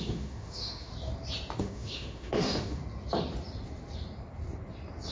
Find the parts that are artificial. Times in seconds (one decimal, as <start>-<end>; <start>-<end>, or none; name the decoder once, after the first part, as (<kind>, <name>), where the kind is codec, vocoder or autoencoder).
0.0-0.9 (autoencoder, DAC-VAE); 1.6-2.8